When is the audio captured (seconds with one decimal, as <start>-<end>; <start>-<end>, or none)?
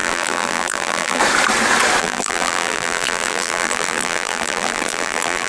1.2-2.0